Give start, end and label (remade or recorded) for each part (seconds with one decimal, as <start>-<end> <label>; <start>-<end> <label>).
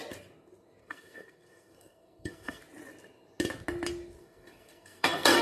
0.0-0.8 recorded; 0.8-2.6 remade; 2.6-4.2 recorded; 4.2-5.4 remade